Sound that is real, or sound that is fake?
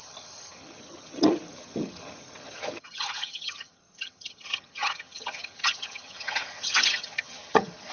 fake